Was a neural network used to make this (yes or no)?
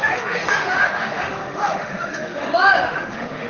yes